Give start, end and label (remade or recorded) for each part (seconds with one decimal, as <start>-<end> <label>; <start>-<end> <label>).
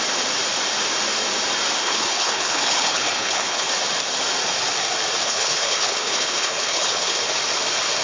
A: 0.0-1.8 recorded; 1.8-3.7 remade; 3.7-5.2 recorded; 5.2-7.2 remade; 7.2-8.0 recorded